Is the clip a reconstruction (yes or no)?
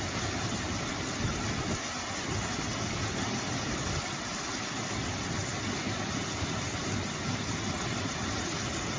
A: no